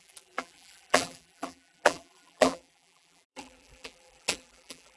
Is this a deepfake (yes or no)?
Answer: yes